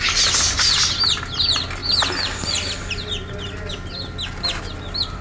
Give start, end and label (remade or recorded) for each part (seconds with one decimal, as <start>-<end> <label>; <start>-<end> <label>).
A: 0.0-5.2 recorded

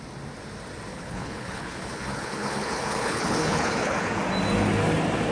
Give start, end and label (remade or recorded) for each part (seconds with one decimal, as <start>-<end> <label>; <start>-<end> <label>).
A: 0.0-0.9 recorded; 0.9-4.1 remade; 4.1-5.3 recorded

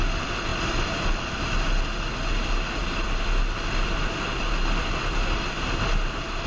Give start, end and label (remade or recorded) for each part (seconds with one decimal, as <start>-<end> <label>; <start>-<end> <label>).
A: 0.0-0.5 recorded; 0.5-1.5 remade; 1.5-2.8 recorded; 2.8-5.7 remade; 5.7-6.5 recorded

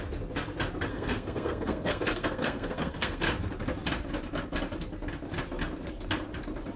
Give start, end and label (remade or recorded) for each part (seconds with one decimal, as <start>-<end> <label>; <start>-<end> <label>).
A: 0.0-0.9 recorded; 0.9-3.3 remade; 3.3-6.8 recorded